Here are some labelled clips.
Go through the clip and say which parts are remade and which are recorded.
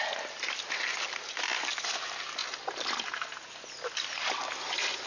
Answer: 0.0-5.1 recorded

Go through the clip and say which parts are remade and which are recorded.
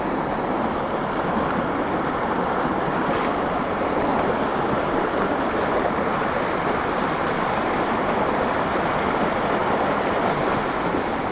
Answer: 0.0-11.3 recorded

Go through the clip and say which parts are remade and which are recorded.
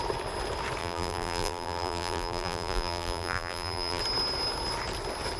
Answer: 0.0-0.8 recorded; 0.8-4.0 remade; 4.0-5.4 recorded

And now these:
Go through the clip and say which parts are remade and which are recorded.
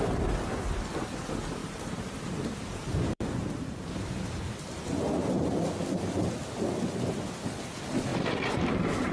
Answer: 0.0-1.6 recorded; 1.6-4.5 remade; 4.5-8.1 recorded; 8.1-9.1 remade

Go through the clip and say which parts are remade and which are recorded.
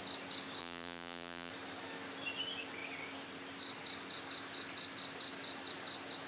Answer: 0.0-0.6 recorded; 0.6-1.5 remade; 1.5-6.3 recorded